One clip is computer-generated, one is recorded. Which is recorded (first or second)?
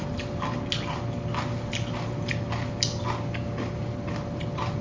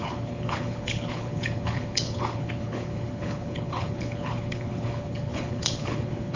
first